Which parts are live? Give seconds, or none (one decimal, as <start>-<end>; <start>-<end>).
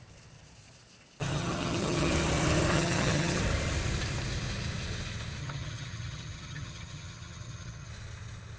0.0-1.2; 2.1-2.7; 3.4-5.4; 7.9-8.6